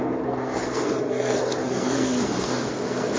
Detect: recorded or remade remade